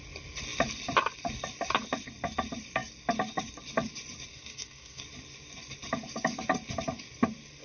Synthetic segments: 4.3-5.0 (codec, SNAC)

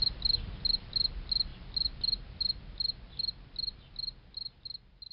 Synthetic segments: none

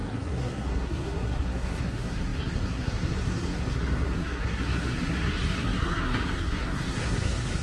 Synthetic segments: 0.0-7.6 (codec, SNAC)

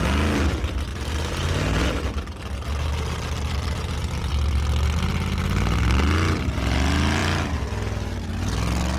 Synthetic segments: none